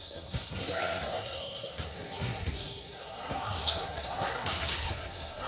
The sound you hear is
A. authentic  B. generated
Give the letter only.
B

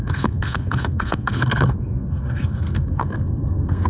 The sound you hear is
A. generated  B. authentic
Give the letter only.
A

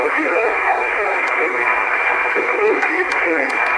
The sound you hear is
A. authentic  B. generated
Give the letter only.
B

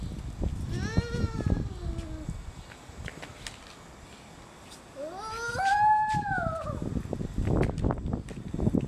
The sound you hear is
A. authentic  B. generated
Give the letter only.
A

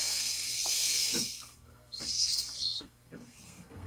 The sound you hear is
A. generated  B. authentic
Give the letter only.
A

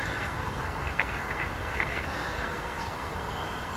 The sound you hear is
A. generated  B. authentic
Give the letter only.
A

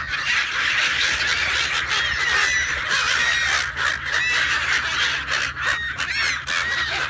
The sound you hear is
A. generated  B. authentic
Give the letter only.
B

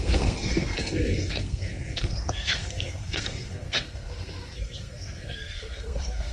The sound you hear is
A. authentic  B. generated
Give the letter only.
B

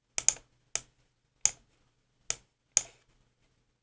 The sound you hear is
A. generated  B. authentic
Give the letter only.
B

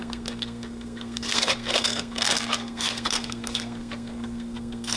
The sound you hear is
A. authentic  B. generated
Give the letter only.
B